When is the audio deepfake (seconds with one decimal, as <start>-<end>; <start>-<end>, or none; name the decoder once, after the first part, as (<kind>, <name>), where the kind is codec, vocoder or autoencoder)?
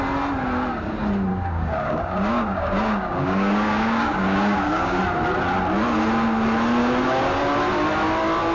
1.3-5.0 (codec, DAC); 6.8-7.4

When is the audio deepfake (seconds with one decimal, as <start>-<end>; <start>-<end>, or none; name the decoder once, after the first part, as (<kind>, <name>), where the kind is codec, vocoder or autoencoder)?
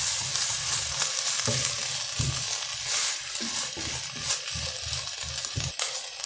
none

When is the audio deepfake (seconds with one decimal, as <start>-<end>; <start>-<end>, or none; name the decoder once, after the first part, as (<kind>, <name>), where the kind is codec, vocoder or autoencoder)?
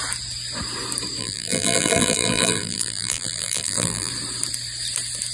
1.2-4.1 (vocoder, BigVGAN v2)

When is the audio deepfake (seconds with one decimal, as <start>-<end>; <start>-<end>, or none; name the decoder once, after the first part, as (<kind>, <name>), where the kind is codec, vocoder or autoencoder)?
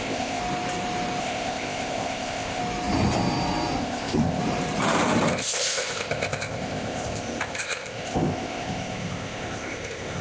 0.0-0.4 (codec, ZipCodec); 1.2-2.6; 3.8-4.4; 5.3-10.2